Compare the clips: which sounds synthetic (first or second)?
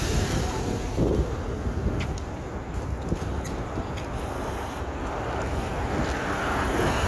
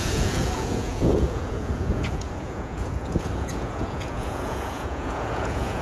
second